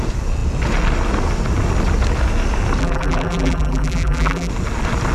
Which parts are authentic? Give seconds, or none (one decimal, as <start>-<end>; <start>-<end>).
0.0-2.8; 4.5-5.1